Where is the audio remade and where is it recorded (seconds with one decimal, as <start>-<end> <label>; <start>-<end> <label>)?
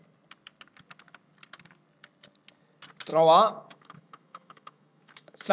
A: 0.0-3.1 recorded; 3.1-5.5 remade